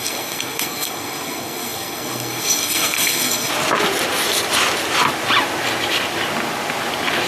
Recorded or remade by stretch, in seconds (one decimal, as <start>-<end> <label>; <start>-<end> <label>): 0.0-3.5 remade; 3.5-7.3 recorded